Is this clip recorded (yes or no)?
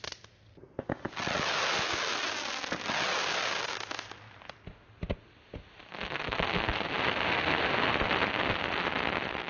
yes